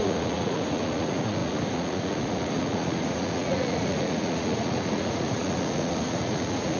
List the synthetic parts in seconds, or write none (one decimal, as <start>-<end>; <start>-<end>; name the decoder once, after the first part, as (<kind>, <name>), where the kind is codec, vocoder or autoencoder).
0.0-6.8 (vocoder, Vocos)